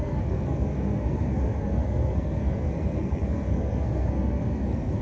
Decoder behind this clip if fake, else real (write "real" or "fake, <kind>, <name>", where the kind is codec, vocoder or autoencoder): fake, codec, SNAC